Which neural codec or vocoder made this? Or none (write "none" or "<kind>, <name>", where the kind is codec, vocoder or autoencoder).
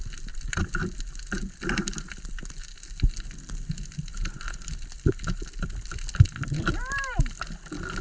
none